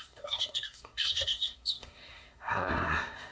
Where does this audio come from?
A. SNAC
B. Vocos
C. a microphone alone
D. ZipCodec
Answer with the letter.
A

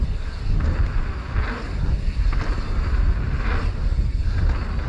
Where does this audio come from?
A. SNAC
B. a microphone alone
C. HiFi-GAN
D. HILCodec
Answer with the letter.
B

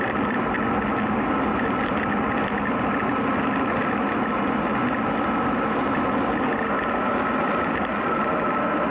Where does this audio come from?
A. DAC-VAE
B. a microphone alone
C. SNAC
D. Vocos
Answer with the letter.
B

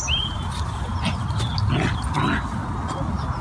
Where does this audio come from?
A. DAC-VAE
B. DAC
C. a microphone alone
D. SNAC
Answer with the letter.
C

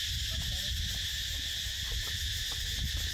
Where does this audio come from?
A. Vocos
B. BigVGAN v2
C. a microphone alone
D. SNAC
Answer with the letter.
C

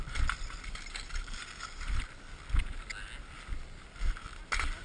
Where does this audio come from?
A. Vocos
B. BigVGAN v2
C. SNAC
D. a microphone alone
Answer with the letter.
D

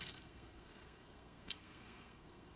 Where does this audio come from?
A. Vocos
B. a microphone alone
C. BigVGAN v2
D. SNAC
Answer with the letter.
D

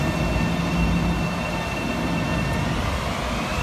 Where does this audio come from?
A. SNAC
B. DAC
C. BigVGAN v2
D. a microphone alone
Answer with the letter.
D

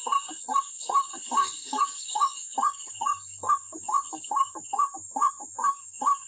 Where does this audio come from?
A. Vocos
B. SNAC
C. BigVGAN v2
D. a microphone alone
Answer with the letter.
B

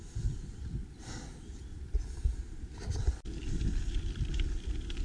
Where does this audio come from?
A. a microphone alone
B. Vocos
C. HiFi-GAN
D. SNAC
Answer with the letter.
A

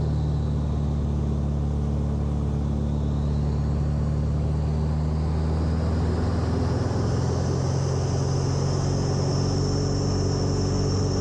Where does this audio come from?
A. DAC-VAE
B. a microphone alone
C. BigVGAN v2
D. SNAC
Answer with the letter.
B